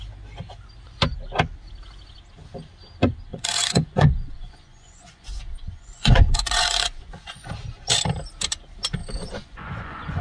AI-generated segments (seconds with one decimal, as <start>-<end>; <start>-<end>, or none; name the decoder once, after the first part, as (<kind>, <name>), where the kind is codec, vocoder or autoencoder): 3.3-7.5 (vocoder, Vocos); 9.0-10.2